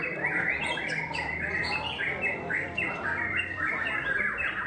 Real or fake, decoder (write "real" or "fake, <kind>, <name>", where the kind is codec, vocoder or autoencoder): fake, vocoder, BigVGAN v2